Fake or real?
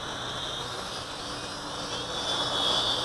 real